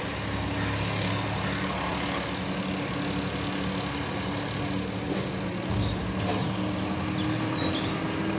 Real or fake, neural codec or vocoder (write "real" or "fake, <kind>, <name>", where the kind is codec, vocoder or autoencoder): real